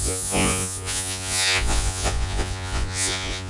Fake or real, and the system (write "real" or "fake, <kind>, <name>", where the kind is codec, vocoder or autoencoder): fake, vocoder, Vocos